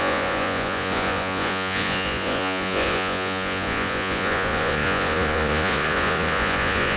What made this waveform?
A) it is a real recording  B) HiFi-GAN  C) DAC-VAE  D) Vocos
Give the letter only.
D